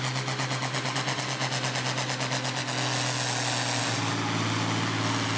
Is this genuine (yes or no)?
yes